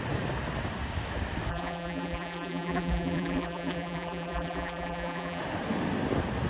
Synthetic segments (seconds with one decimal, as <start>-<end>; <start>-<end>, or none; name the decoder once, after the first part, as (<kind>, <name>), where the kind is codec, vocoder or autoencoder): 1.5-5.4 (vocoder, BigVGAN v2)

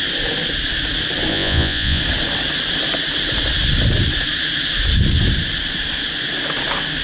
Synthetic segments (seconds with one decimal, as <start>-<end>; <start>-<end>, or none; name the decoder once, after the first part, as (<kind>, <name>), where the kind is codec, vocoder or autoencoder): 1.3-2.0 (vocoder, Vocos)